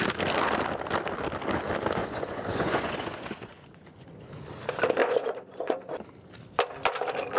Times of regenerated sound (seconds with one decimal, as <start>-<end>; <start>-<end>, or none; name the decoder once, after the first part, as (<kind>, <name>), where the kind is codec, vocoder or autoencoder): 2.0-4.4 (vocoder, Vocos); 5.0-5.9